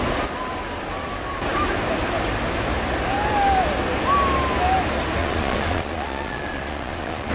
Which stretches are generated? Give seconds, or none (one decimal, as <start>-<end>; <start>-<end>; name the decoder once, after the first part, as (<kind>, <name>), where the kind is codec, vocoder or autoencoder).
5.2-7.3 (vocoder, Vocos)

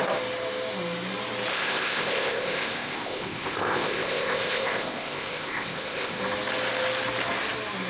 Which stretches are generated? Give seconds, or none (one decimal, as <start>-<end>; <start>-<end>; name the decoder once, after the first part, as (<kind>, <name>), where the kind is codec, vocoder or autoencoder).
1.5-6.2 (codec, ZipCodec)